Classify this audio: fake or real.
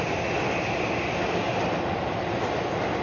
real